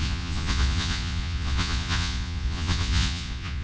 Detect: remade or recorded remade